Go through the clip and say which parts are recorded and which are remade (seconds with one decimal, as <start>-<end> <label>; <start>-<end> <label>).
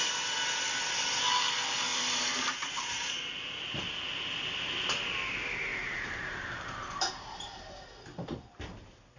0.0-1.9 recorded; 1.9-3.3 remade; 3.3-5.7 recorded; 5.7-7.9 remade; 7.9-9.2 recorded